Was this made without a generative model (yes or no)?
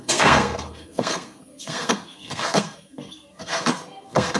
no